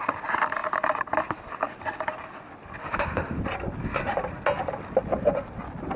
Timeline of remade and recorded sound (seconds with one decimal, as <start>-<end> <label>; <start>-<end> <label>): 0.0-2.8 recorded; 2.8-3.4 remade; 3.4-6.0 recorded